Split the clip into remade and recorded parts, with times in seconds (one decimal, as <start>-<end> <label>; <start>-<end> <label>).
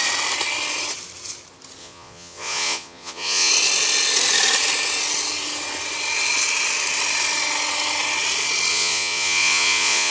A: 0.0-1.8 recorded; 1.8-3.5 remade; 3.5-8.7 recorded; 8.7-10.1 remade